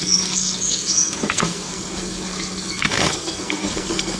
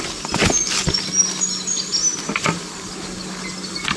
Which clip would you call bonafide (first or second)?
second